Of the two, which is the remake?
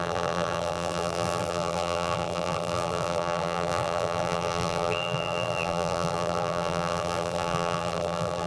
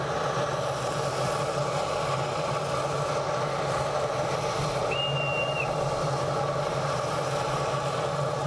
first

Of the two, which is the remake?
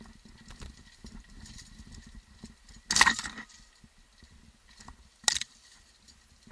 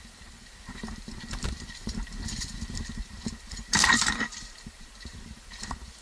second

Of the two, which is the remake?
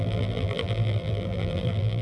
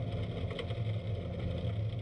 first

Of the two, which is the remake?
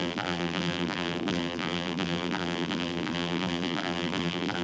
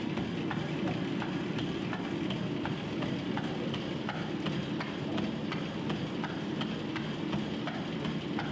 first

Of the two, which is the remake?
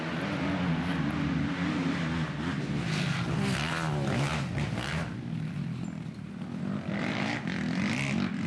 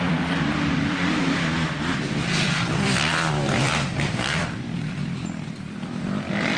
second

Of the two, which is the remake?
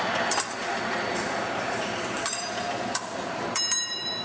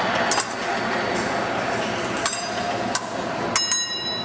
first